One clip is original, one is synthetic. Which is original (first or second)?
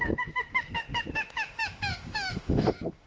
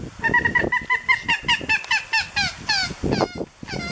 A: second